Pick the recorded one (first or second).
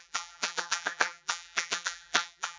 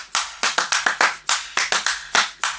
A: second